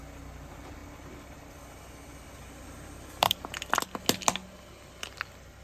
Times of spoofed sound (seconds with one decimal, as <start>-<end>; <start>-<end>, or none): 0.8-3.7